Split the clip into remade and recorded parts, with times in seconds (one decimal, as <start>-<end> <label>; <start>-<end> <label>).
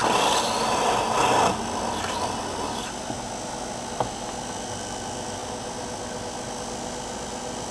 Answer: 0.0-7.7 recorded